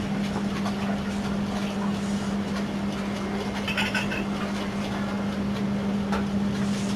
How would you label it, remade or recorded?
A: recorded